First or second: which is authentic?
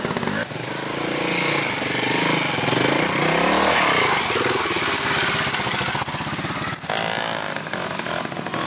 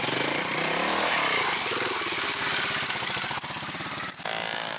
first